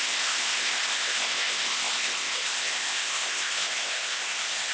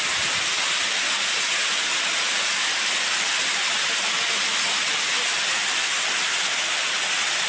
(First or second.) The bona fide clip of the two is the second